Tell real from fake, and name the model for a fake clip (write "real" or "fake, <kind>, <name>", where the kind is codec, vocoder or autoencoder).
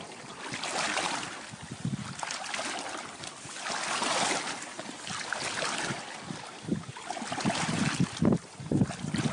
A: real